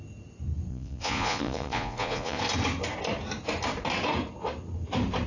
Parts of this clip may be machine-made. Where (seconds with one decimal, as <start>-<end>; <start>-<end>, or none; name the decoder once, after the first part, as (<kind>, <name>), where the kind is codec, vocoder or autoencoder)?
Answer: 0.7-2.4 (vocoder, Vocos)